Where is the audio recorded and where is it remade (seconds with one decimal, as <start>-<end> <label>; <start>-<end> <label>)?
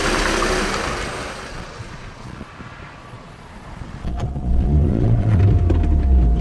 0.0-1.5 recorded; 1.5-2.5 remade; 2.5-3.0 recorded; 3.0-5.4 remade; 5.4-6.4 recorded